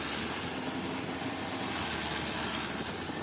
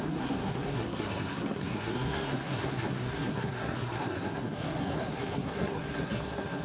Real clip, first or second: first